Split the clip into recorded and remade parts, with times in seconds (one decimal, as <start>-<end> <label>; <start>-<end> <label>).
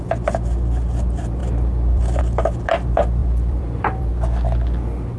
0.0-1.4 recorded; 1.4-2.2 remade; 2.2-3.2 recorded; 3.2-4.1 remade; 4.1-5.2 recorded